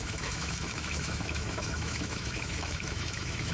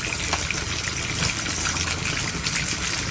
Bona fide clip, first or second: second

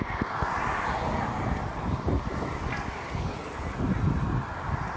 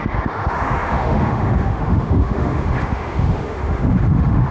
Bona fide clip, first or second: first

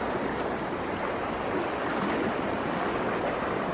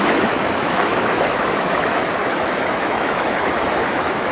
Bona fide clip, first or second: first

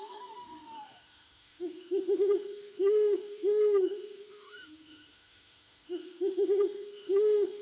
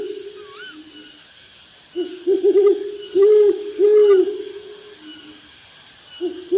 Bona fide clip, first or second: second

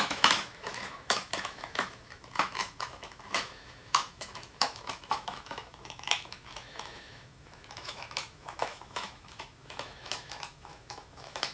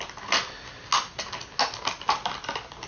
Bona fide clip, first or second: second